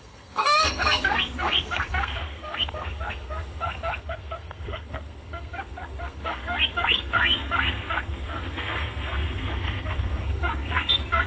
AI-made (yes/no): yes